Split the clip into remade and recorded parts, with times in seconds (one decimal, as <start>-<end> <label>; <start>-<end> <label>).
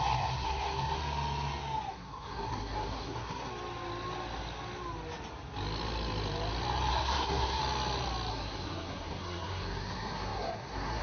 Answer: 0.0-1.0 remade; 1.0-1.9 recorded; 1.9-3.5 remade; 3.5-6.9 recorded; 6.9-7.6 remade; 7.6-8.3 recorded; 8.3-11.0 remade